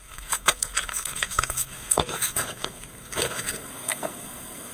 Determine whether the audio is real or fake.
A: fake